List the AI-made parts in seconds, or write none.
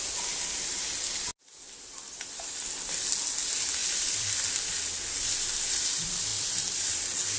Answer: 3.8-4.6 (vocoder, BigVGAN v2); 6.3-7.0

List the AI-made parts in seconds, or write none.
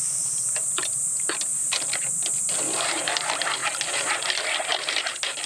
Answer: none